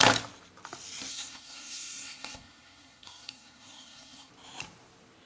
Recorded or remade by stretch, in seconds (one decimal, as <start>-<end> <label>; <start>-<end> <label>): 0.0-1.1 recorded; 1.1-4.3 remade; 4.3-5.3 recorded